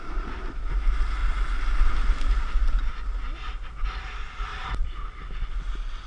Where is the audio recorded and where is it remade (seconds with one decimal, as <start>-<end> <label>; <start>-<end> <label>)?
0.0-4.5 recorded; 4.5-5.5 remade; 5.5-6.1 recorded